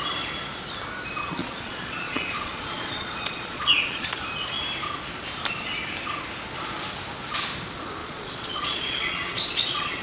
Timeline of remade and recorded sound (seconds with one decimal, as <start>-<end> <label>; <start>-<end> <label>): 0.0-1.4 recorded; 1.4-4.2 remade; 4.2-8.0 recorded; 8.0-10.0 remade